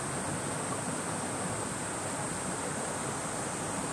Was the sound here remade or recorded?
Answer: recorded